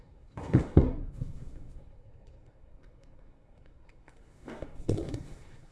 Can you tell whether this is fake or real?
fake